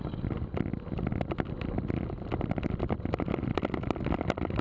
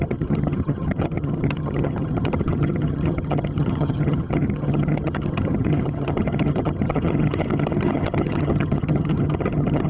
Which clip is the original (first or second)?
first